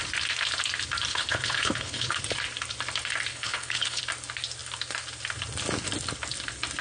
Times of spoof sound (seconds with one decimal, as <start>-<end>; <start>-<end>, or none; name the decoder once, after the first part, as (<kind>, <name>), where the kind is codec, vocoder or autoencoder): 1.1-2.2 (codec, HILCodec); 3.3-4.0